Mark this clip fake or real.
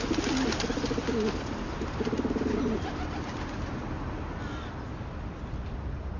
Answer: real